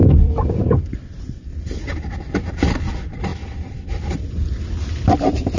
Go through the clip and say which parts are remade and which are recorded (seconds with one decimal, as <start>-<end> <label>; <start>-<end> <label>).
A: 0.0-5.6 recorded